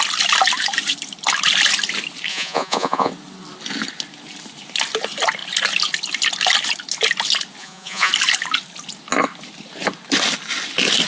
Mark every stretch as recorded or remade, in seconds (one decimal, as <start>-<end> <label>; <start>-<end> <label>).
0.0-2.3 recorded; 2.3-3.1 remade; 3.1-7.6 recorded; 7.6-8.1 remade; 8.1-11.1 recorded